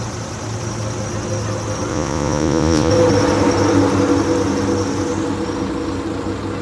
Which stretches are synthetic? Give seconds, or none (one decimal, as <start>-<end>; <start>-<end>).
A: 1.9-2.9